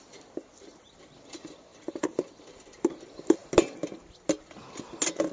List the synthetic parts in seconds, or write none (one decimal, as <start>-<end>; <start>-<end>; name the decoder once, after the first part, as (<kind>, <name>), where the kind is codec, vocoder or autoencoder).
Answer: none